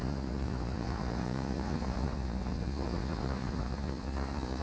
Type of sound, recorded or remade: remade